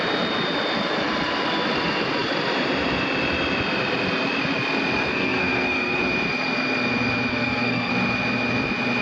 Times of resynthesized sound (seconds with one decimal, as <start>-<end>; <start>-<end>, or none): 5.1-6.0; 7.3-7.9